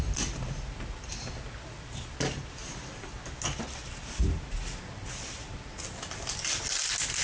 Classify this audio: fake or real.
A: real